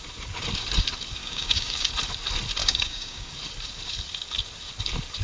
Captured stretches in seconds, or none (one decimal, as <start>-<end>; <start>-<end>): 0.0-1.2; 1.9-2.6; 3.3-5.2